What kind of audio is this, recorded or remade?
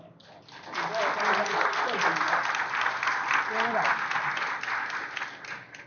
recorded